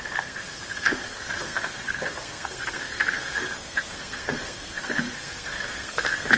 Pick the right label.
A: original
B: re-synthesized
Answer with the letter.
B